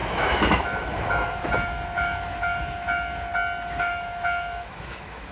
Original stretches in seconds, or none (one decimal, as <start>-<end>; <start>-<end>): 3.3-3.8